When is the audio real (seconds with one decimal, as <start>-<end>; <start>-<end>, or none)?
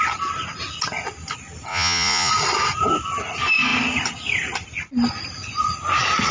0.0-1.7; 2.3-6.3